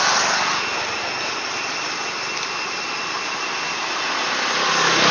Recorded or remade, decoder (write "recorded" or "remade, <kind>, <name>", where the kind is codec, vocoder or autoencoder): recorded